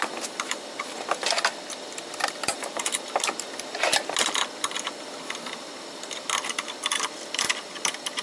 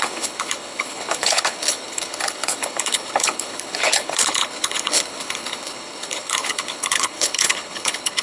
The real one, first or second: first